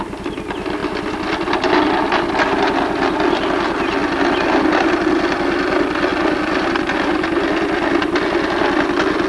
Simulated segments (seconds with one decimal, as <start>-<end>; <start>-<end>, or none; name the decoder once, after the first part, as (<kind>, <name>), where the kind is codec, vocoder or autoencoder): none